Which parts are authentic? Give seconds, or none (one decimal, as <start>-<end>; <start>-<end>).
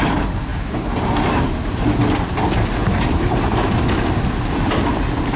0.0-0.5; 1.8-2.8; 3.4-5.4